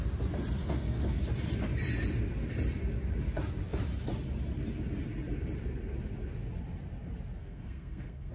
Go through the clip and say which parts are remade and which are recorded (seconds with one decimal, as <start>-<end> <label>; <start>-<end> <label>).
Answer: 0.0-0.6 recorded; 0.6-1.2 remade; 1.2-7.4 recorded; 7.4-8.3 remade